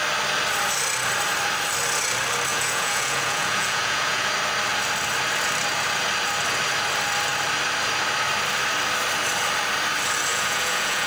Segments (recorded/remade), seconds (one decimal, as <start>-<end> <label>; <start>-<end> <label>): 0.0-2.5 recorded; 2.5-4.3 remade; 4.3-10.3 recorded; 10.3-11.1 remade